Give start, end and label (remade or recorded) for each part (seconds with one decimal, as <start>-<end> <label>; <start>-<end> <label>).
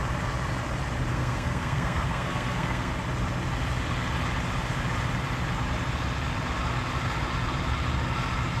0.0-1.1 recorded; 1.1-2.9 remade; 2.9-8.6 recorded